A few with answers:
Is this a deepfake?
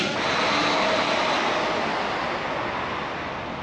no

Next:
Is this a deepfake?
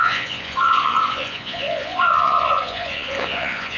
yes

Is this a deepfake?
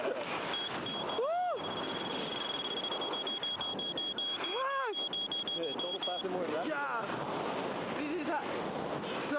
no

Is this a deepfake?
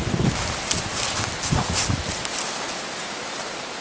no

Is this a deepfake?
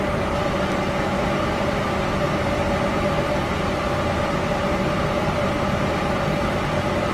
no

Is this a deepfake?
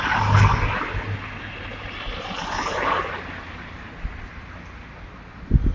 no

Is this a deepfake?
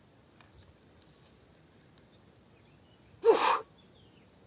no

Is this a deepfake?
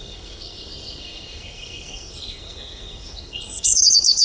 yes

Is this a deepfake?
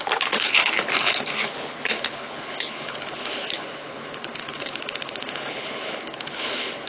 yes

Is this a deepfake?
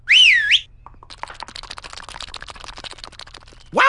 no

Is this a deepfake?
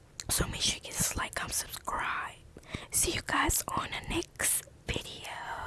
no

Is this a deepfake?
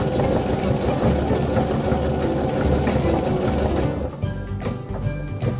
no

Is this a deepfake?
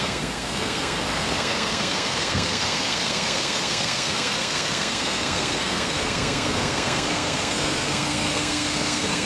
yes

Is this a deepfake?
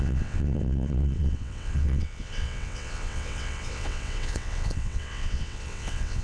yes